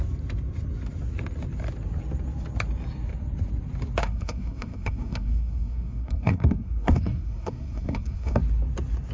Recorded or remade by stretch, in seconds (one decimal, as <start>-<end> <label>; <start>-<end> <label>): 0.0-4.0 recorded; 4.0-8.4 remade; 8.4-9.1 recorded